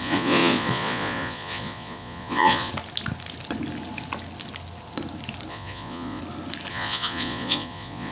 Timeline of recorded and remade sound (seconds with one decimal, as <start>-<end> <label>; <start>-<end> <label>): 0.0-2.7 remade; 2.7-5.5 recorded; 5.5-6.2 remade; 6.2-6.7 recorded; 6.7-8.1 remade